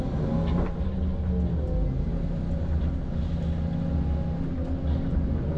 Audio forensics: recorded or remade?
recorded